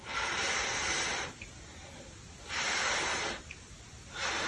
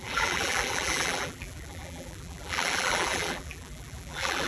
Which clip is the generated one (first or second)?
second